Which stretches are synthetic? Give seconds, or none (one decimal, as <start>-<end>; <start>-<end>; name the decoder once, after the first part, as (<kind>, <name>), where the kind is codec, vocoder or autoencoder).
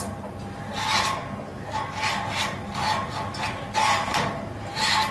none